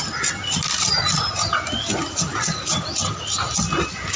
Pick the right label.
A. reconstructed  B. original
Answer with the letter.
B